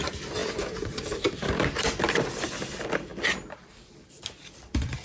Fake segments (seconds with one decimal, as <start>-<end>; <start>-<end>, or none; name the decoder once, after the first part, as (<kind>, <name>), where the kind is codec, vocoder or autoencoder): 0.0-0.4 (vocoder, BigVGAN v2); 1.3-5.0